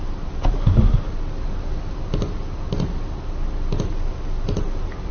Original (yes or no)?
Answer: yes